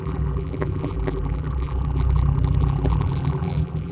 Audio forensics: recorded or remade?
remade